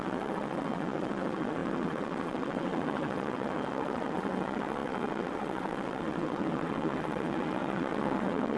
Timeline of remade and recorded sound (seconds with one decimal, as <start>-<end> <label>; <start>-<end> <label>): 0.0-8.6 remade